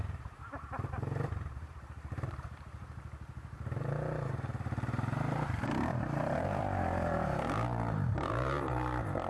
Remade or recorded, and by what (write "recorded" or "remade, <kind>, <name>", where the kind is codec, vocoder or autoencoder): remade, vocoder, BigVGAN v2